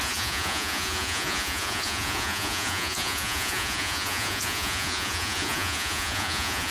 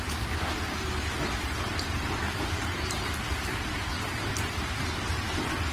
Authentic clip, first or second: second